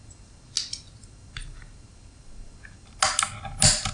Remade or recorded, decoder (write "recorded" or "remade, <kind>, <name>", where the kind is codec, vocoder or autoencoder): recorded